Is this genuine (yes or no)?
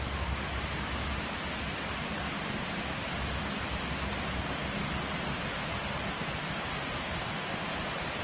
yes